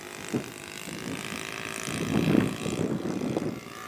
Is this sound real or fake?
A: real